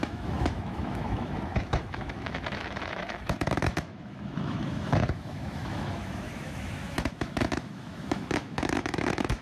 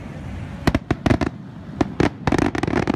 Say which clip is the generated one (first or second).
first